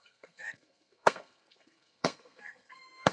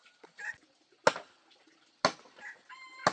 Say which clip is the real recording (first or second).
second